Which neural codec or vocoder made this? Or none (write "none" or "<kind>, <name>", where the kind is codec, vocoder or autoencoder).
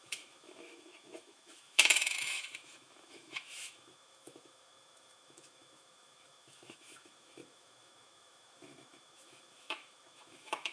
autoencoder, DAC-VAE